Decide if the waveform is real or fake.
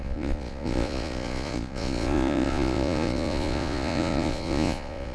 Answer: fake